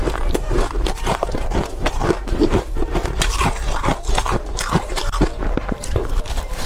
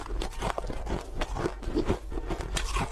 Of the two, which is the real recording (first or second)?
second